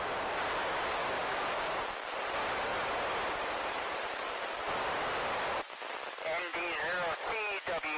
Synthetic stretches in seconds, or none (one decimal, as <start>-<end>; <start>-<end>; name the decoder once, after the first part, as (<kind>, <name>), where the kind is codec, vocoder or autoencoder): 1.0-1.8 (codec, DAC)